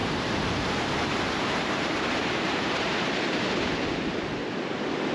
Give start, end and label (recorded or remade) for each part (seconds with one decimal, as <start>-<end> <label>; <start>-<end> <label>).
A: 0.0-3.1 remade; 3.1-5.1 recorded

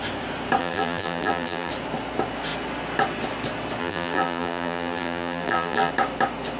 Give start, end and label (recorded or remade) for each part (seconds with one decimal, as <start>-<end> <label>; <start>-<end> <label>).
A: 0.0-0.6 recorded; 0.6-1.7 remade; 1.7-3.8 recorded; 3.8-5.9 remade; 5.9-6.6 recorded

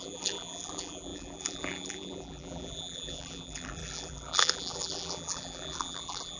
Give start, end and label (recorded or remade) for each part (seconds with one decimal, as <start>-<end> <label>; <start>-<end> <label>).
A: 0.0-6.4 remade

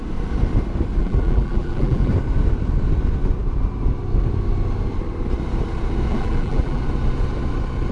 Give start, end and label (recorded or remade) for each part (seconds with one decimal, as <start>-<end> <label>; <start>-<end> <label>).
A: 0.0-1.0 recorded; 1.0-2.1 remade; 2.1-6.1 recorded; 6.1-6.8 remade; 6.8-7.9 recorded

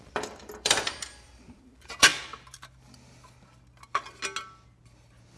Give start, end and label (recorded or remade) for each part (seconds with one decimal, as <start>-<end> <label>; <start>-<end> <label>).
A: 0.0-2.1 remade; 2.1-5.4 recorded

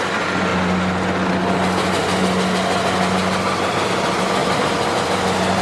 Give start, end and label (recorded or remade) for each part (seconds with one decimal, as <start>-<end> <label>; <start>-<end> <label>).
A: 0.0-4.4 recorded; 4.4-5.6 remade

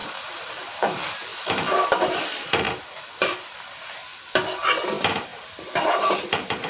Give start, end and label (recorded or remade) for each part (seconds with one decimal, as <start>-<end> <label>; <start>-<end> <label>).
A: 0.0-4.1 remade; 4.1-5.1 recorded; 5.1-6.7 remade